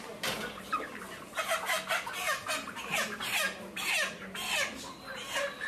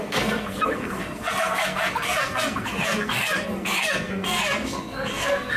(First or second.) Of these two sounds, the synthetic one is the second